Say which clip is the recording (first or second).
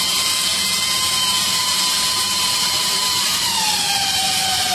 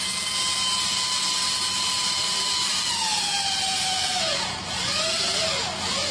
second